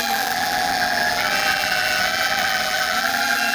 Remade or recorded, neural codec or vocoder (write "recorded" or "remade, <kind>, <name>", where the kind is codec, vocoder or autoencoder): remade, vocoder, BigVGAN v2